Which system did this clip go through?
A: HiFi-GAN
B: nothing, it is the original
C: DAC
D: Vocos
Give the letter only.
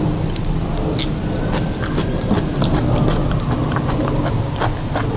B